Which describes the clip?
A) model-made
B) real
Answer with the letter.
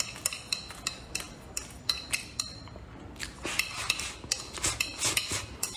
B